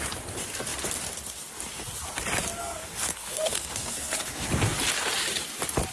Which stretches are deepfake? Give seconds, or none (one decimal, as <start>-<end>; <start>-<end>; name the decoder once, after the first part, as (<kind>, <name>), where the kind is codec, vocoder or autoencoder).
2.6-4.5 (codec, SNAC)